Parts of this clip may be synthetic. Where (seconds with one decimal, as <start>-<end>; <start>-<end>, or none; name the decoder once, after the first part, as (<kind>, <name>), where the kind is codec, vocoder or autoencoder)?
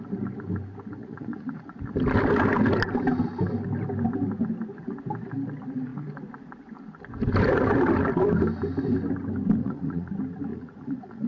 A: 1.0-1.8 (vocoder, Vocos); 9.6-10.1; 10.5-11.3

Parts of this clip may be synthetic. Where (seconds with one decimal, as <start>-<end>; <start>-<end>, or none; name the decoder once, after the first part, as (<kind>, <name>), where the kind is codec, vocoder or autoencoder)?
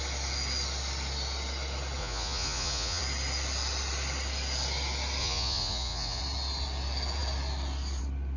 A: 2.0-3.0 (vocoder, Vocos); 5.2-6.2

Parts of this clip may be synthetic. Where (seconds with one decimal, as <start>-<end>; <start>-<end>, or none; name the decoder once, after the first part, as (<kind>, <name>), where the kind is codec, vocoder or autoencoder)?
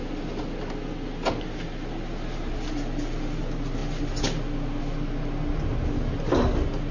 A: none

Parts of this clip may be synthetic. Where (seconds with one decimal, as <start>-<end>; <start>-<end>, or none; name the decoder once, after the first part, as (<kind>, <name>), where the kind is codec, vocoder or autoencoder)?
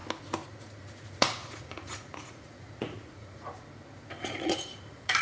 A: 0.5-3.5 (vocoder, Vocos); 4.2-5.2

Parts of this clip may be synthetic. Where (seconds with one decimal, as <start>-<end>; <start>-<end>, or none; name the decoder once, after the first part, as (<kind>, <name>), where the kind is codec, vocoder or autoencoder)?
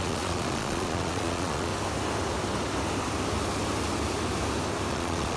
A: 0.0-1.7 (vocoder, Vocos); 4.9-5.4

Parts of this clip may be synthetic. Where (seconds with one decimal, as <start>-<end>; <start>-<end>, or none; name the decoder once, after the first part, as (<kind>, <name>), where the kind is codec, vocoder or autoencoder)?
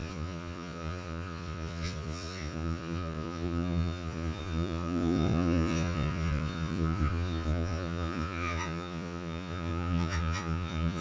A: 0.0-11.0 (vocoder, Vocos)